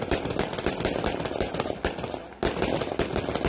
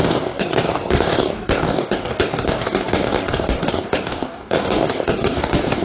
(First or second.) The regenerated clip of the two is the second